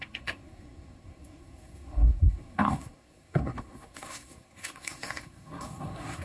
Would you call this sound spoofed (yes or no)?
yes